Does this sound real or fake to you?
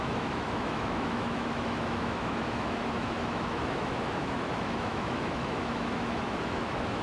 fake